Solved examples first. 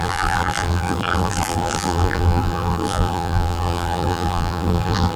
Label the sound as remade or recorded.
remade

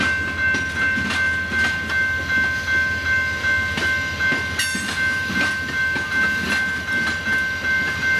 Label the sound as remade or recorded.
recorded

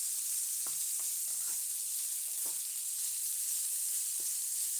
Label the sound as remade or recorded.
recorded